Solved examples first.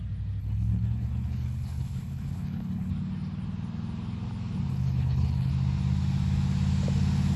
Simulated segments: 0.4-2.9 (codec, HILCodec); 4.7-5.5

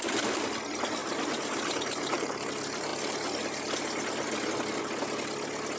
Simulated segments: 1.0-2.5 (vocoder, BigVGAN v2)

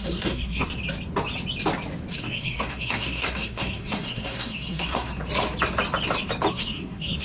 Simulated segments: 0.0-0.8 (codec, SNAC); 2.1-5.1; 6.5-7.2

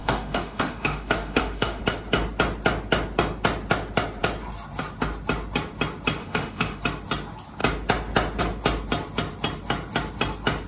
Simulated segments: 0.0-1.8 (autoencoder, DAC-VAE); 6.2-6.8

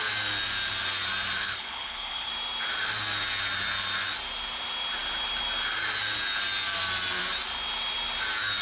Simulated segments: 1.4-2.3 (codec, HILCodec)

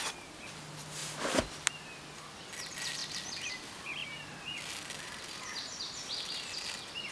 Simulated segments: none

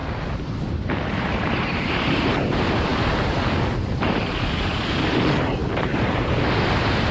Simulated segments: 0.7-2.9 (vocoder, BigVGAN v2); 4.0-7.1